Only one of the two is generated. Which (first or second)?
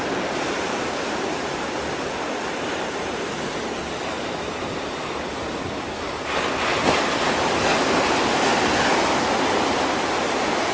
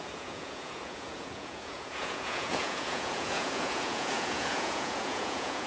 second